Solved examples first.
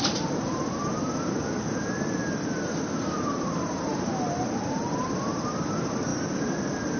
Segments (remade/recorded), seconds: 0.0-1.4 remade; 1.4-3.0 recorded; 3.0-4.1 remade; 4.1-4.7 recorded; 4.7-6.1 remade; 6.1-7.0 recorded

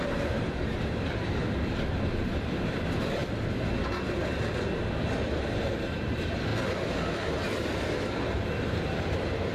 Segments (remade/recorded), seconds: 0.0-1.4 remade; 1.4-2.2 recorded; 2.2-3.2 remade; 3.2-5.3 recorded; 5.3-6.5 remade; 6.5-8.2 recorded; 8.2-9.5 remade

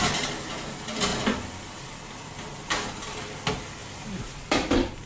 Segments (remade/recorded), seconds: 0.0-1.1 recorded; 1.1-2.7 remade; 2.7-3.8 recorded; 3.8-4.5 remade; 4.5-5.1 recorded

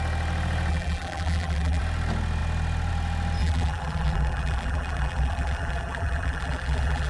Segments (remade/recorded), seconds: 0.0-0.7 recorded; 0.7-1.8 remade; 1.8-3.4 recorded; 3.4-7.1 remade